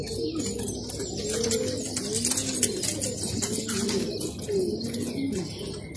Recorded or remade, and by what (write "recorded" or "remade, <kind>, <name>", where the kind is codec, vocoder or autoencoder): recorded